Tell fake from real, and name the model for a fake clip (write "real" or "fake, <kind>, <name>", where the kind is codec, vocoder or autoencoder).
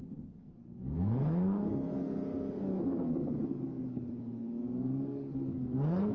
fake, codec, SNAC